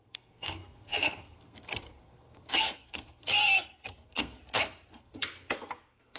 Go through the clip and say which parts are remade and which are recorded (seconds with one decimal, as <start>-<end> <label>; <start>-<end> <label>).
0.0-4.4 remade; 4.4-5.0 recorded; 5.0-6.2 remade

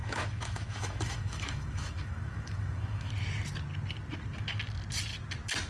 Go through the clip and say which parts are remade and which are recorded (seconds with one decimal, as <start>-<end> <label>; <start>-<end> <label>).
0.0-3.1 remade; 3.1-5.7 recorded

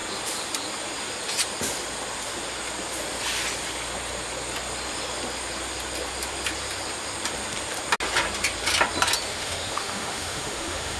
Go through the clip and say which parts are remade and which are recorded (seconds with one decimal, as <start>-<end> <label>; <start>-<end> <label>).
0.0-9.3 recorded; 9.3-11.0 remade

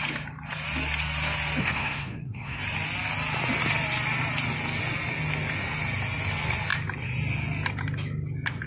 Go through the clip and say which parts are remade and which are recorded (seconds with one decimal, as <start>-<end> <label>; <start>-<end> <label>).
0.0-1.6 recorded; 1.6-2.6 remade; 2.6-8.7 recorded

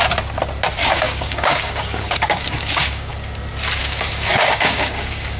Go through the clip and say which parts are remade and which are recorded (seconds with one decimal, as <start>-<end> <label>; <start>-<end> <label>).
0.0-0.8 recorded; 0.8-3.1 remade; 3.1-3.8 recorded; 3.8-5.4 remade